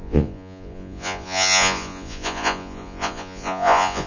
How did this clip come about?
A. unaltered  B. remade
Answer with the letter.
B